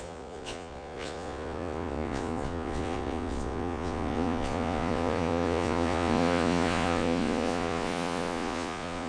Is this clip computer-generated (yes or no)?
yes